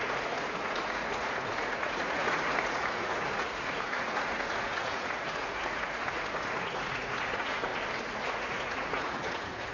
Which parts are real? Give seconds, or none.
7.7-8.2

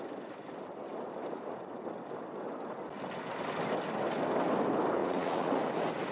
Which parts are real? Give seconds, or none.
0.0-5.0; 5.6-6.1

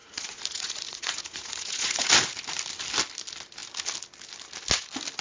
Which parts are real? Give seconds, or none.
2.1-5.2

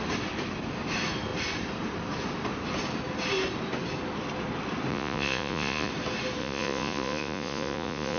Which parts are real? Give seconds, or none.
0.0-4.9; 5.9-6.4

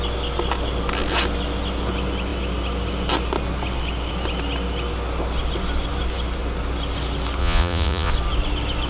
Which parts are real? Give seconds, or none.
0.0-7.4; 8.1-8.9

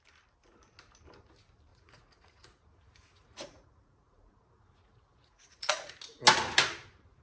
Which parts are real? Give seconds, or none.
0.0-1.7; 5.9-7.2

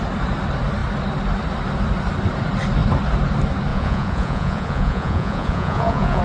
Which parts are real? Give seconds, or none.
0.0-3.7